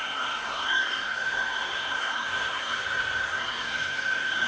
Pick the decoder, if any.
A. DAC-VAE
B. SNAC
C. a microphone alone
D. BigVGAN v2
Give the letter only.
B